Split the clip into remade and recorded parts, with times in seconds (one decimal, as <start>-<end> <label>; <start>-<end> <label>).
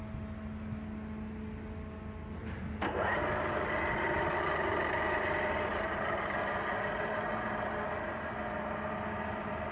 0.0-9.7 recorded